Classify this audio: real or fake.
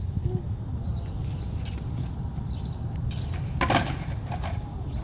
real